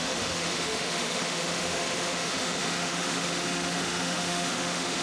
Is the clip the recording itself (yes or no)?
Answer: no